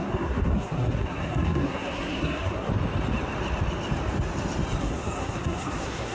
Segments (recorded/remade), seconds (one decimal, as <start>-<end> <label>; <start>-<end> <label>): 0.0-2.7 remade; 2.7-4.8 recorded; 4.8-6.1 remade